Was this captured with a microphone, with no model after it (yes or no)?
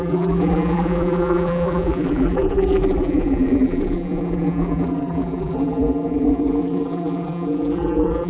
no